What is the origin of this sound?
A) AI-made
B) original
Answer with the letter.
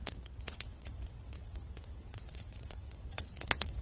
A